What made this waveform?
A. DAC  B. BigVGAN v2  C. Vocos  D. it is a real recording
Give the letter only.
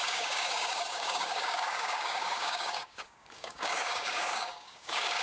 A